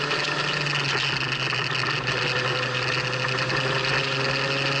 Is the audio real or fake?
real